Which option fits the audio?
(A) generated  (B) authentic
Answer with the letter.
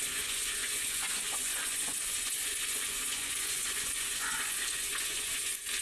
A